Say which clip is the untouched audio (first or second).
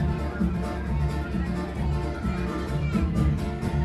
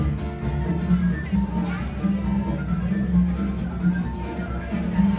second